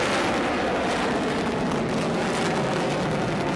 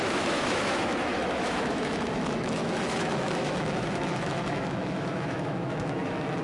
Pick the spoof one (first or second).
second